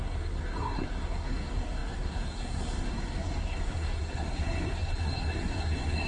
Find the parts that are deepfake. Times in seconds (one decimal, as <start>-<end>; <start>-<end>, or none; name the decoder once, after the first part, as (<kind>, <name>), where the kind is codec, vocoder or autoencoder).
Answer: 0.0-6.1 (codec, SNAC)